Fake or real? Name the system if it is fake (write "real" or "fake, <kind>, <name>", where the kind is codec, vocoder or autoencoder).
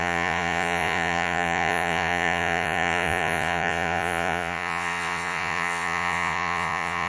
fake, vocoder, Vocos